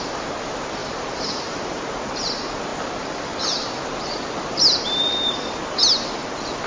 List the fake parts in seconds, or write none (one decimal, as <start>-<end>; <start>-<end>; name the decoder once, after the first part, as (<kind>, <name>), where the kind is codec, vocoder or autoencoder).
0.8-1.8 (vocoder, BigVGAN v2)